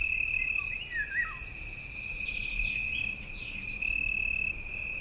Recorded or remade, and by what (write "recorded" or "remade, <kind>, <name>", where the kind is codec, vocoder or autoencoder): recorded